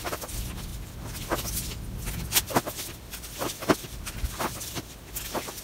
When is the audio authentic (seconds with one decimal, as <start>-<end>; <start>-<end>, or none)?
0.0-5.6